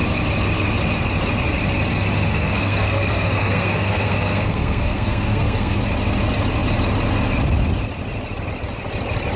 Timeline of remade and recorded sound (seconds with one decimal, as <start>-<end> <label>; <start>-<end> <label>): 0.0-2.3 recorded; 2.3-5.8 remade; 5.8-9.4 recorded